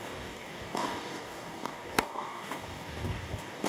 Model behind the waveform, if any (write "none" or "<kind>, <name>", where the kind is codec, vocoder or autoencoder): codec, DAC